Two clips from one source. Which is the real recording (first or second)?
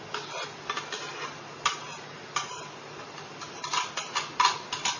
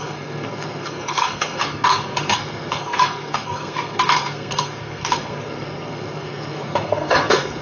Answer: first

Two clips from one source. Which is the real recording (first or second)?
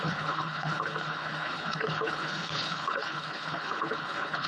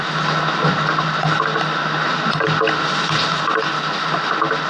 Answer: second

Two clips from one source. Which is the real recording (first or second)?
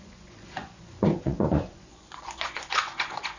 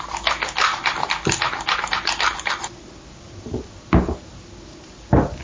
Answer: second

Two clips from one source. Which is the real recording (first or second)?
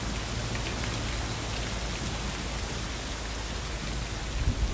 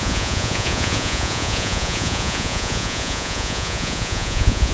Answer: first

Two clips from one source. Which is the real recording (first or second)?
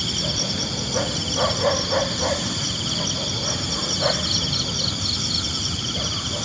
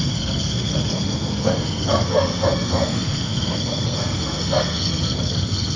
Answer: first